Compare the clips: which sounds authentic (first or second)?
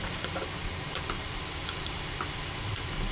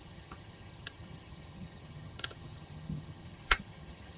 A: first